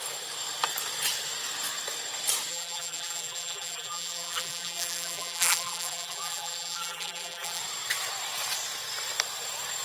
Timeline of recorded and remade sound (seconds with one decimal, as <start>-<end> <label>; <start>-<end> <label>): 0.0-2.5 recorded; 2.5-7.6 remade; 7.6-9.8 recorded